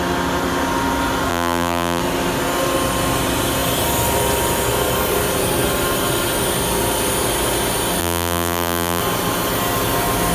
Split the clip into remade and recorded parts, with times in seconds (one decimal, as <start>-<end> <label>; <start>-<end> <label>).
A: 0.0-1.3 recorded; 1.3-2.0 remade; 2.0-8.0 recorded; 8.0-9.0 remade; 9.0-10.3 recorded